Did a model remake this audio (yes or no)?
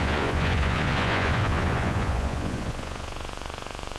yes